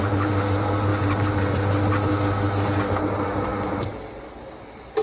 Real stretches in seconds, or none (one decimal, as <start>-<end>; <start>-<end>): 2.1-2.8; 3.9-4.4